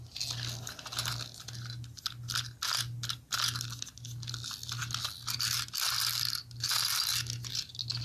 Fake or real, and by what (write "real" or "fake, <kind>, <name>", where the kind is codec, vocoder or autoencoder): real